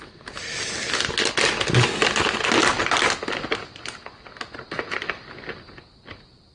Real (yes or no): yes